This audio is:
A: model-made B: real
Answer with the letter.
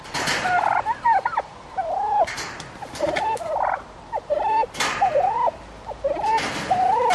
B